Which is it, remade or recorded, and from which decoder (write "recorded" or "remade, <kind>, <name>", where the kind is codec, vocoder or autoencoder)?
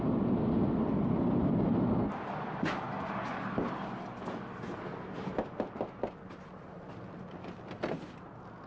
recorded